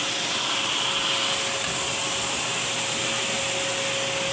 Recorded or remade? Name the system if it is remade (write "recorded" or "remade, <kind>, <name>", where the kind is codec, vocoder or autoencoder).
recorded